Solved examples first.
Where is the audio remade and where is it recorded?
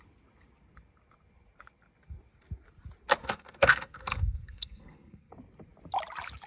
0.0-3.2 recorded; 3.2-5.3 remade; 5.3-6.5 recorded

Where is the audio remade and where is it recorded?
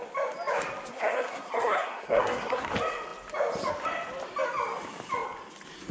0.0-0.9 recorded; 0.9-2.7 remade; 2.7-5.9 recorded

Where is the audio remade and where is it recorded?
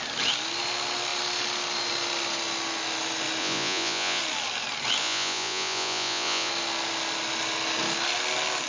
0.0-3.4 recorded; 3.4-4.2 remade; 4.2-5.0 recorded; 5.0-6.5 remade; 6.5-8.7 recorded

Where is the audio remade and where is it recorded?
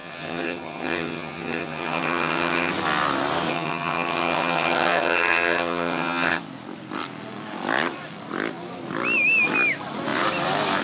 0.0-2.7 remade; 2.7-3.5 recorded; 3.5-6.4 remade; 6.4-10.8 recorded